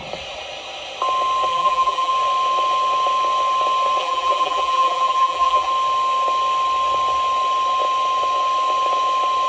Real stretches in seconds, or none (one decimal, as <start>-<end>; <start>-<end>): 0.0-1.5; 2.1-4.0; 5.7-9.5